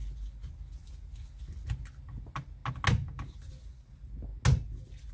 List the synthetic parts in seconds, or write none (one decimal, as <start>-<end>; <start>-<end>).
none